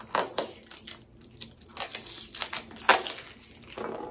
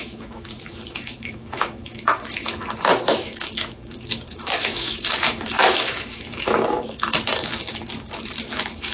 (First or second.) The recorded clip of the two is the first